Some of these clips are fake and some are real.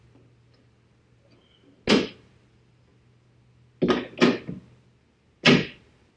real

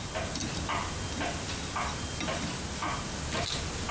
real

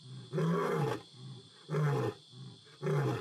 real